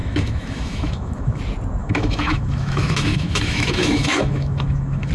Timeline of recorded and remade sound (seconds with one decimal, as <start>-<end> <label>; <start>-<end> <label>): 0.0-1.4 remade; 1.4-1.8 recorded; 1.8-5.1 remade

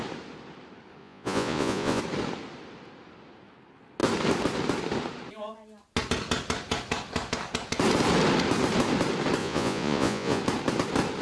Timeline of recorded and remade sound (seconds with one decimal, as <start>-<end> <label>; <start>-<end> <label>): 0.0-1.0 recorded; 1.0-2.0 remade; 2.0-9.4 recorded; 9.4-10.4 remade; 10.4-11.2 recorded